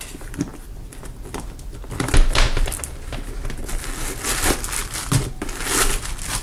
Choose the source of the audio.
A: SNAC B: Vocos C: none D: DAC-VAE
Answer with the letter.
C